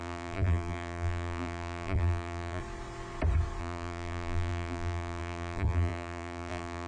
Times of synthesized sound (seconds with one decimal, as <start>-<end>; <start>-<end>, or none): 0.0-2.6; 3.6-6.9